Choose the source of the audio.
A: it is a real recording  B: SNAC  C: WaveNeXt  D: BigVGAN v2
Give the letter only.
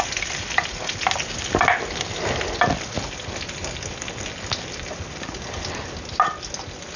A